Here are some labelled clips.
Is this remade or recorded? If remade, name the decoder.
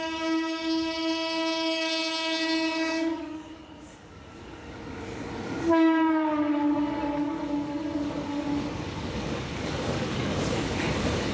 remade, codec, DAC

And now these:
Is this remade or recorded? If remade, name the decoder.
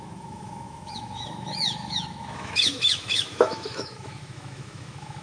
remade, autoencoder, DAC-VAE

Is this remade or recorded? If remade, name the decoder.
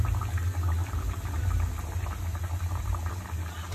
recorded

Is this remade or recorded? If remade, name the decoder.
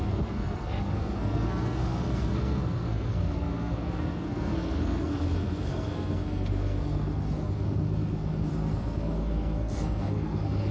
remade, codec, SNAC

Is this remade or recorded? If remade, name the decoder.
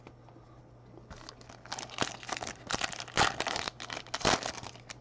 recorded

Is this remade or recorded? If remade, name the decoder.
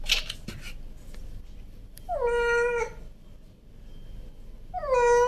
recorded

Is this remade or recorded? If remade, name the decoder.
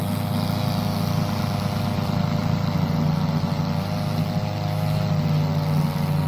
recorded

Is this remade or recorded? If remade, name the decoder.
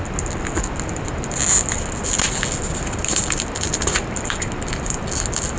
recorded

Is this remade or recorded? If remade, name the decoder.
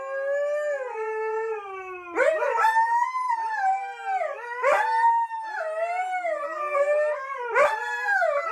recorded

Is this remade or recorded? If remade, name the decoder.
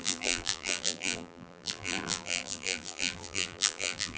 remade, vocoder, BigVGAN v2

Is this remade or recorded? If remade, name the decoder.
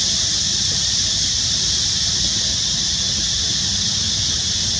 recorded